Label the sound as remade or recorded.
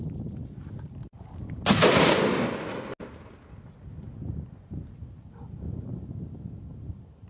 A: recorded